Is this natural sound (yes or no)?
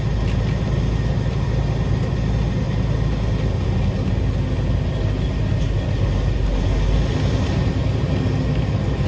yes